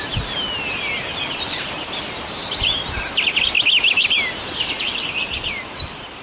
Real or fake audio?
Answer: real